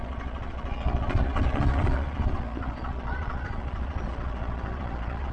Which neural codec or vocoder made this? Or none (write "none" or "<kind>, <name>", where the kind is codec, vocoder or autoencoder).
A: vocoder, Vocos